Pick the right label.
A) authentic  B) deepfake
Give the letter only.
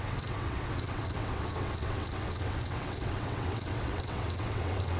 B